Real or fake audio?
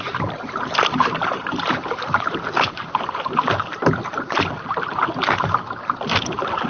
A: real